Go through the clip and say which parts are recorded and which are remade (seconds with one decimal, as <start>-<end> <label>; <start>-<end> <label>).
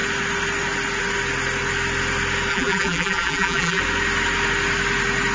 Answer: 0.0-2.5 recorded; 2.5-3.8 remade; 3.8-5.3 recorded